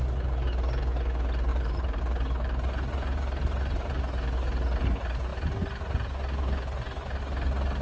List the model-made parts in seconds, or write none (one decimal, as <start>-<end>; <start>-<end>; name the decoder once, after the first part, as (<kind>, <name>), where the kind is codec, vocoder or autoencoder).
1.5-2.0 (vocoder, BigVGAN v2); 3.1-4.0